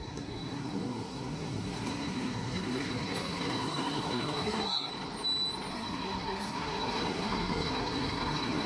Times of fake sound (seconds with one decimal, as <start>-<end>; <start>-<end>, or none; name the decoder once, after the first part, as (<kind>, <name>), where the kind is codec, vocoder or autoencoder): 0.0-4.9 (codec, SNAC); 5.7-8.7